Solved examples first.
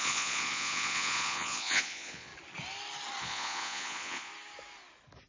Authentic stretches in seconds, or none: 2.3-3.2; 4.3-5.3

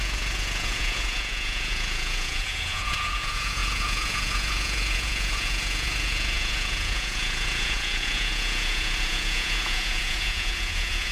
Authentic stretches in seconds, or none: none

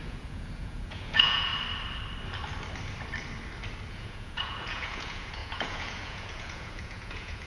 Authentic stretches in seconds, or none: 1.5-3.9